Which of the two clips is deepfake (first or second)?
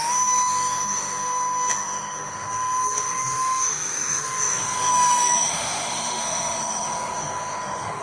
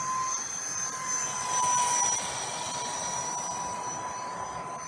first